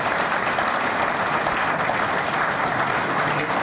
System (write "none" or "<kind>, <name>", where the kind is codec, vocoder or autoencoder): none